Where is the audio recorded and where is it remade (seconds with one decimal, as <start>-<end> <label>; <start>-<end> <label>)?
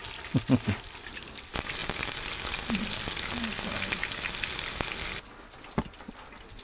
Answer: 0.0-6.6 recorded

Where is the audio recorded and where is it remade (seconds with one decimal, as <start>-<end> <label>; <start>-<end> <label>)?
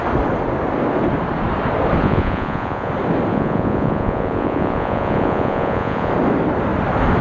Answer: 0.0-2.0 recorded; 2.0-2.9 remade; 2.9-3.3 recorded; 3.3-6.1 remade; 6.1-7.2 recorded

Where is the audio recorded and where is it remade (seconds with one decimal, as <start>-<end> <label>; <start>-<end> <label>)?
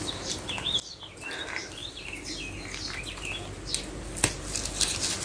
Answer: 0.0-5.2 recorded